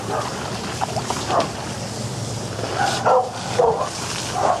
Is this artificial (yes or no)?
no